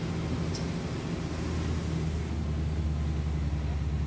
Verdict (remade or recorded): recorded